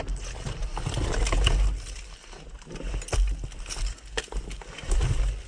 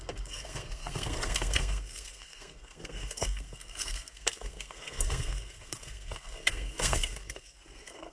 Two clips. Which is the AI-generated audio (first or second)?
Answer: second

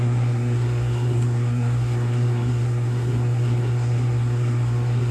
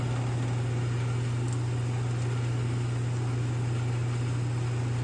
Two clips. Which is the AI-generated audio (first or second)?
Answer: first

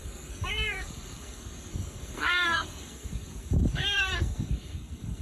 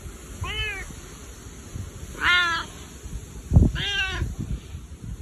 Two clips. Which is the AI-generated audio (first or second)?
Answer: first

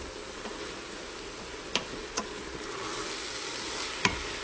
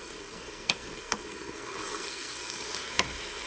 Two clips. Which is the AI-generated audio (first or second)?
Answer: second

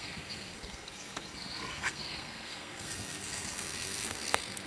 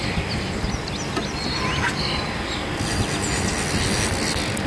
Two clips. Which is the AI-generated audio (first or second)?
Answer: first